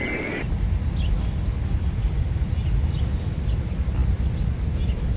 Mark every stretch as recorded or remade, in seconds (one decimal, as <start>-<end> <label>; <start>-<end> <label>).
0.0-5.2 recorded